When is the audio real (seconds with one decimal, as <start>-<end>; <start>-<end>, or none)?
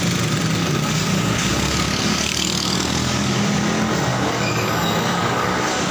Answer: 0.0-0.6; 3.4-4.1; 5.5-5.9